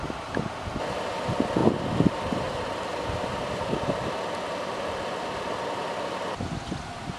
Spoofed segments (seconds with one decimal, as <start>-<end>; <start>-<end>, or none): none